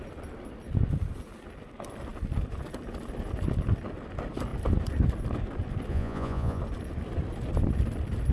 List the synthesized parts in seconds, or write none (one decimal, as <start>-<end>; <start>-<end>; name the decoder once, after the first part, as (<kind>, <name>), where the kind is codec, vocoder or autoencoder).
5.9-6.6 (vocoder, Vocos)

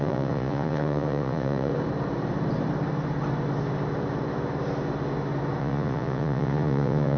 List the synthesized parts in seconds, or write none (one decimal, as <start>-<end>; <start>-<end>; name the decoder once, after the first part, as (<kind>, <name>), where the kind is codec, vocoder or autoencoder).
0.0-1.7 (vocoder, Vocos); 5.6-7.2

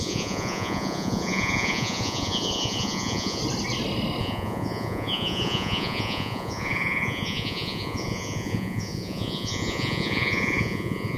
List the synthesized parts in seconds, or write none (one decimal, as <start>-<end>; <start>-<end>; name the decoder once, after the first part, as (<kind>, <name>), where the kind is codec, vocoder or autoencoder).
0.0-3.4 (vocoder, Vocos); 4.2-11.2

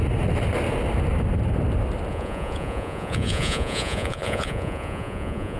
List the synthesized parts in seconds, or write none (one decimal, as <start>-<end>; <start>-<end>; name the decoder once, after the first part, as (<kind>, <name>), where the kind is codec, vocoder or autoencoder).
2.1-5.6 (vocoder, Vocos)

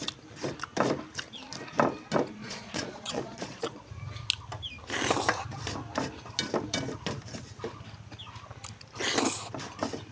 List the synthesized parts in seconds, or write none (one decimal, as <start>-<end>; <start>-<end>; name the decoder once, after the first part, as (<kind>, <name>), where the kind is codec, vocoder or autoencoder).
2.4-3.9 (vocoder, Vocos)

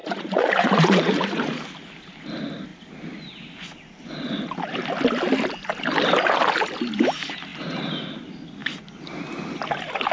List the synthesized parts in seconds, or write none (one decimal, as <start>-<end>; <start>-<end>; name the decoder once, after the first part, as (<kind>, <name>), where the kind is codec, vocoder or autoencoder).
0.0-1.6 (vocoder, Vocos)

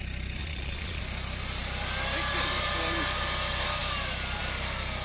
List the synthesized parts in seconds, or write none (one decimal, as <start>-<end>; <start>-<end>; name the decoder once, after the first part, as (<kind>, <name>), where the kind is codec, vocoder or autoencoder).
0.4-1.0 (vocoder, Vocos)